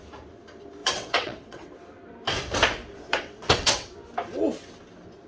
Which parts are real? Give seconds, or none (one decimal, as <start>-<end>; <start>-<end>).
0.0-0.8; 1.7-3.1; 3.9-5.3